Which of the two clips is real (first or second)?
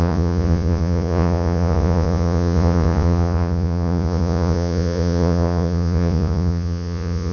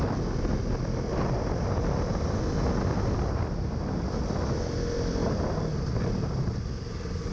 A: second